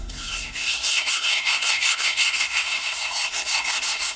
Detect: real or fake fake